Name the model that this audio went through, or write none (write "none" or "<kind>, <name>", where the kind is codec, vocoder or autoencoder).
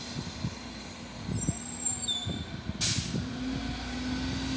none